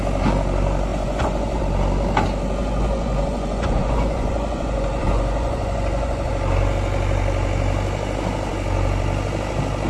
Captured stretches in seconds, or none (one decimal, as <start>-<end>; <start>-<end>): 0.0-0.9; 1.6-2.6; 6.3-9.9